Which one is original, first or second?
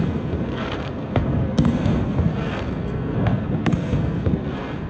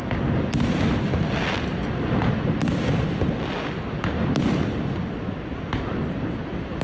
second